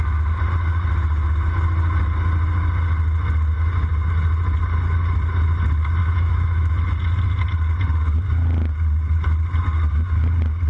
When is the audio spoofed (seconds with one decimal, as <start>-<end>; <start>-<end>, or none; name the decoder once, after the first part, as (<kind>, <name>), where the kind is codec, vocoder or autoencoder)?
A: 6.0-6.7 (autoencoder, DAC-VAE)